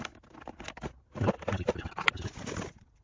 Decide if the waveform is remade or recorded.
recorded